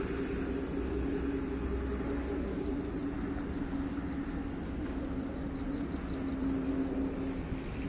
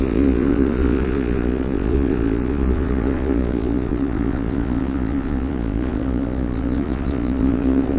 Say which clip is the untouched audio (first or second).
first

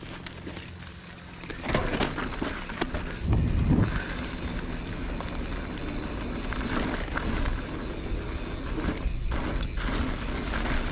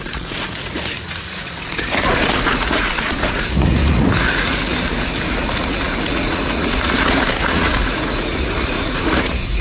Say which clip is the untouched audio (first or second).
first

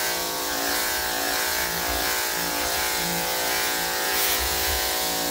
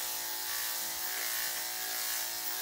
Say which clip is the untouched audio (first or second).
second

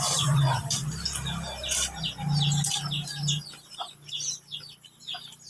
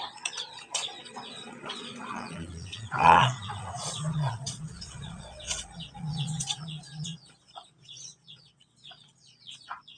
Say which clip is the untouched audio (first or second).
first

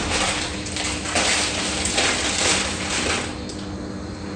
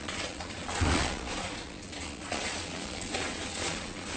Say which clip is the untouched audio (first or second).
first